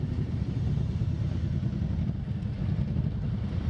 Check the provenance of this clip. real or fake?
real